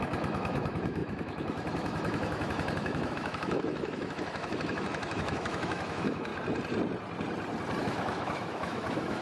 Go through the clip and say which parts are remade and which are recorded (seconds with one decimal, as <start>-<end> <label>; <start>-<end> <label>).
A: 0.0-6.3 remade; 6.3-7.8 recorded; 7.8-9.2 remade